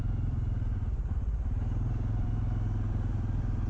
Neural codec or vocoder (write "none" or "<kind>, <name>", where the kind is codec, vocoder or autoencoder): none